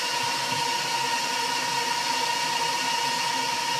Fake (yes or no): no